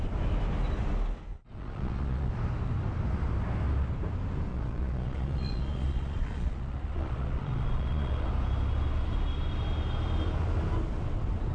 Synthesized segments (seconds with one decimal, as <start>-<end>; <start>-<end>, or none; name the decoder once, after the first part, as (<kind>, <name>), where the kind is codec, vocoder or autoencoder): 1.3-2.3 (vocoder, Vocos); 4.5-8.3